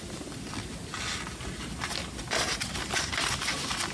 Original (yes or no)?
yes